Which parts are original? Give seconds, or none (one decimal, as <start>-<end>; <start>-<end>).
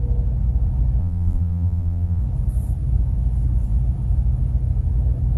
0.0-1.0; 2.2-5.4